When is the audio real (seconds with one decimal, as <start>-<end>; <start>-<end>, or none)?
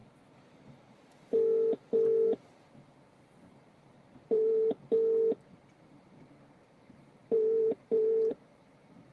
0.0-4.3; 4.8-5.9